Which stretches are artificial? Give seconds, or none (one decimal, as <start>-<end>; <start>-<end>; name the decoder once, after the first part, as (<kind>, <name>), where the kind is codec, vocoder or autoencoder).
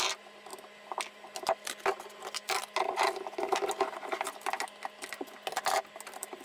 none